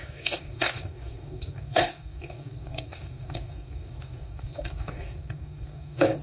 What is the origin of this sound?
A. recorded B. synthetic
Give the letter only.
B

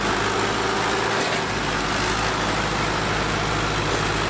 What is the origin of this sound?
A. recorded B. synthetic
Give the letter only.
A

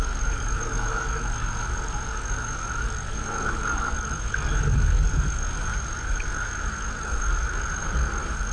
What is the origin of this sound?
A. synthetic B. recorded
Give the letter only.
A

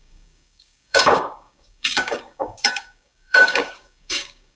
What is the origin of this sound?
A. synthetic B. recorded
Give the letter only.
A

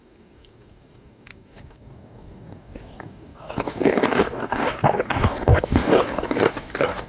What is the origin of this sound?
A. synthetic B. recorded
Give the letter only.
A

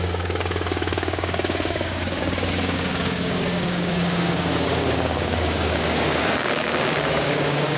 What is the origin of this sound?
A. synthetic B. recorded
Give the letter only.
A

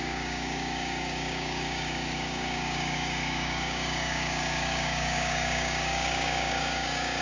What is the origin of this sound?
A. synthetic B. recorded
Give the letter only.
A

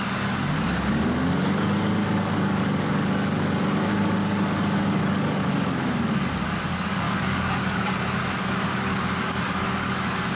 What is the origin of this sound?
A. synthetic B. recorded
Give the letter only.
A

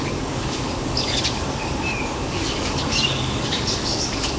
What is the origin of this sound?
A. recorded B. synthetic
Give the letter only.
B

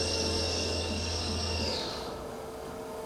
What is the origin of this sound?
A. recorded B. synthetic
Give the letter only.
B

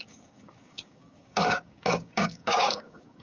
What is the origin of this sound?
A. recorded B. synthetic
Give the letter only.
B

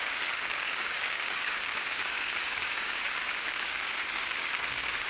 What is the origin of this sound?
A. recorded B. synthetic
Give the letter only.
B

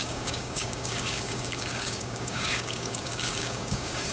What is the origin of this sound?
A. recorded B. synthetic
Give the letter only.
B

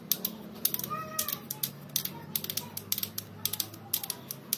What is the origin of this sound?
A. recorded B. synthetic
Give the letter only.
A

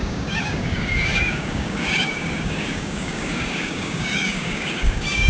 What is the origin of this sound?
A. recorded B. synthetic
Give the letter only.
B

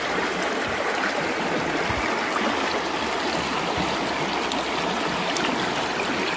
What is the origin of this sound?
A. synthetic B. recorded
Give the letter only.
B